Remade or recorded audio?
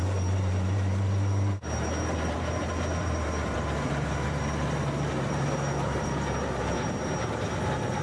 remade